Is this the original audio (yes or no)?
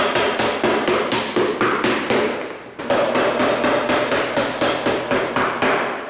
yes